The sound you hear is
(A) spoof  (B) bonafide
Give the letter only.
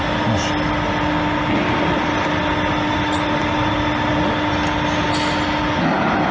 B